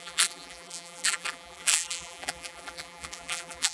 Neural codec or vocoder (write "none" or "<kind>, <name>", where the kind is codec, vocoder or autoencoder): vocoder, BigVGAN v2